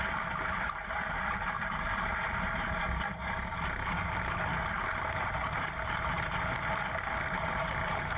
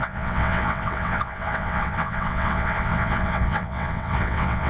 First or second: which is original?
first